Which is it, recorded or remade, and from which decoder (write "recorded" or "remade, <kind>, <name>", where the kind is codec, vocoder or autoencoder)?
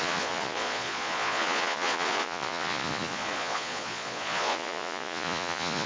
remade, vocoder, Vocos